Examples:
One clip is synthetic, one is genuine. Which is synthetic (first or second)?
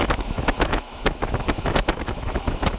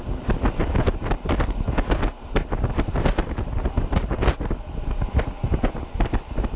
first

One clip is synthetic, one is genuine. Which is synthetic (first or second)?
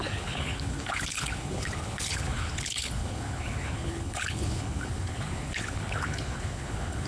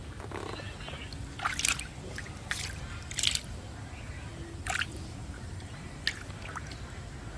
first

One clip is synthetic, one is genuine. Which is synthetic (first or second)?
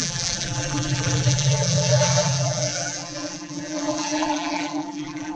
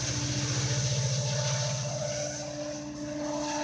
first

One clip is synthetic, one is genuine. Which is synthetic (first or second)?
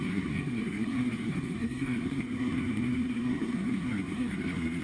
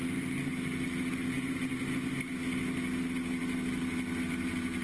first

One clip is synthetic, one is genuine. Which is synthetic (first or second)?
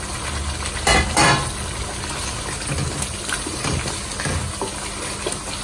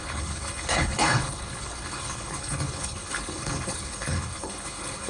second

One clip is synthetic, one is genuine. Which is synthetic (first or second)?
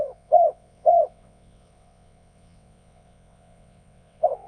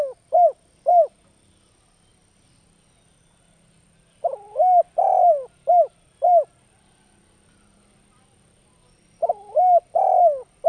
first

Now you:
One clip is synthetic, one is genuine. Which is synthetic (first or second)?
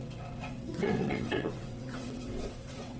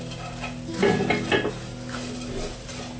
first